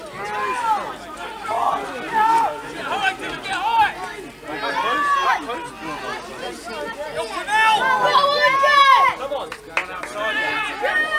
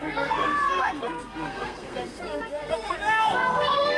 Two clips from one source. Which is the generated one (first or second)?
second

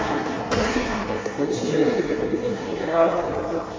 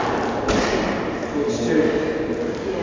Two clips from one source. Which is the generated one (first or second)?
first